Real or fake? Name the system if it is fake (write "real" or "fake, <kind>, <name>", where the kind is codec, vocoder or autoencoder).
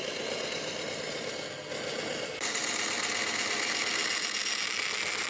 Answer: real